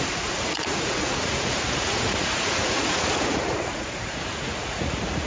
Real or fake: fake